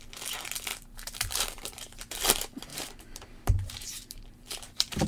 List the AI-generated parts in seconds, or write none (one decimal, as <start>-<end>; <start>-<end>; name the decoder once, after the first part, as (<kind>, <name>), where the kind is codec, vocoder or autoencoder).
0.7-2.2 (vocoder, BigVGAN v2); 2.7-5.1